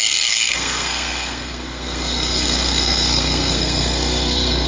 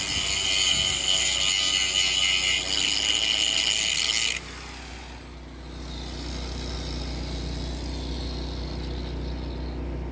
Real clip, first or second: second